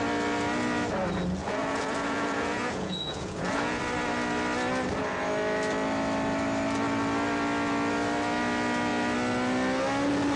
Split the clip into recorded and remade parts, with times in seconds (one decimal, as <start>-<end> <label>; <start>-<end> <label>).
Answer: 0.0-1.4 recorded; 1.4-3.8 remade; 3.8-10.4 recorded